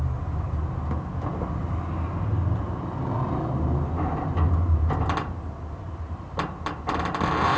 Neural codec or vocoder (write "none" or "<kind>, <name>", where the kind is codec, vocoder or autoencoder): none